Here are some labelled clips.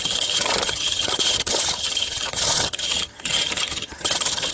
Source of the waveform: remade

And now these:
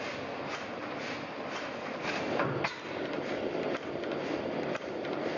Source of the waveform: recorded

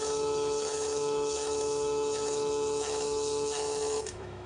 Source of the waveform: remade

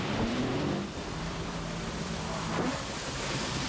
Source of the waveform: remade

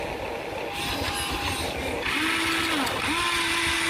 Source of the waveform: recorded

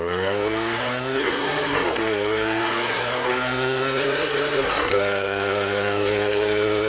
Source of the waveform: remade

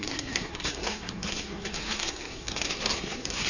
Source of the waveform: remade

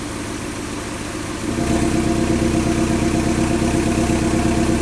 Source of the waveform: recorded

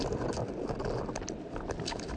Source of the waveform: recorded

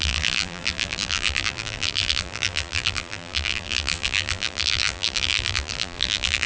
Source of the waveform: remade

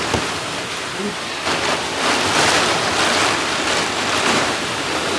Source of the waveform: remade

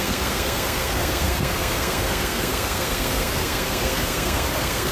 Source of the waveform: remade